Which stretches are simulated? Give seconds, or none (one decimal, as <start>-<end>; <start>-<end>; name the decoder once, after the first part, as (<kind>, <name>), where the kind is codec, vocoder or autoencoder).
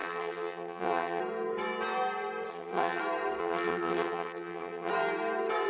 0.0-1.2 (vocoder, HiFi-GAN); 2.5-3.0; 3.4-4.9